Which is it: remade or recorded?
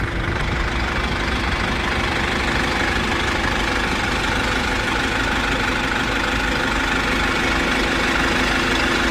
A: recorded